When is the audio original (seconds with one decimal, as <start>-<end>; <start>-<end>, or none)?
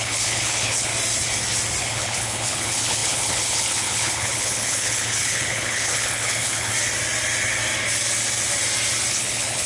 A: 0.9-1.8; 6.7-9.1